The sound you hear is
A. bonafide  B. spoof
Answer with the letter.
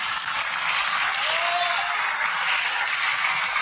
A